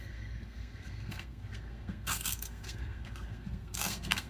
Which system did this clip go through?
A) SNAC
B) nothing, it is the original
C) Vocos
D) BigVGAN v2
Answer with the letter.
A